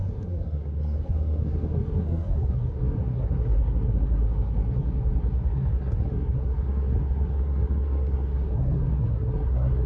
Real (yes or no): no